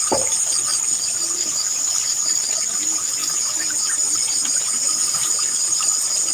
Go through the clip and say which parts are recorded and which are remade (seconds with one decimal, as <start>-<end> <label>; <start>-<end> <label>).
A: 0.0-3.2 recorded; 3.2-6.3 remade